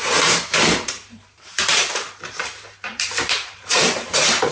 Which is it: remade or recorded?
remade